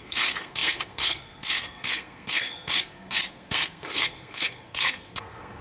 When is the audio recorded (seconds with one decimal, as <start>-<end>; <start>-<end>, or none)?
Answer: none